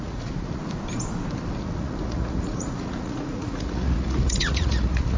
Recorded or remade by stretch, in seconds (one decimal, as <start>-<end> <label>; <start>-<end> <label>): 0.0-0.6 remade; 0.6-1.5 recorded; 1.5-5.2 remade